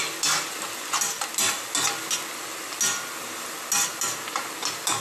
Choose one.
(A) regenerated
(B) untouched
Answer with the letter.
B